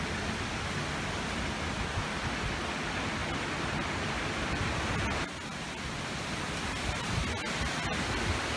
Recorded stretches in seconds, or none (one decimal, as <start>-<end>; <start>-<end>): 0.0-8.6